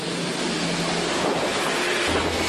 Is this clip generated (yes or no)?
no